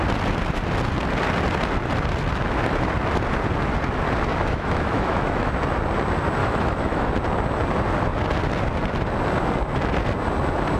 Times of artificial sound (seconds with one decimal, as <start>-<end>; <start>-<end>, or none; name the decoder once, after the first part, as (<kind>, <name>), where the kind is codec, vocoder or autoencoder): 4.3-5.5 (autoencoder, DAC-VAE); 6.4-7.1